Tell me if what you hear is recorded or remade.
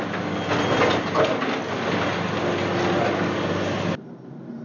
recorded